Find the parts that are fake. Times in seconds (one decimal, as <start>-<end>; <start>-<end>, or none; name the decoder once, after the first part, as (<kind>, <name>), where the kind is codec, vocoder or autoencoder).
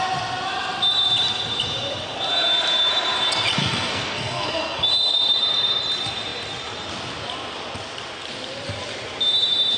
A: 3.6-4.8 (codec, SNAC)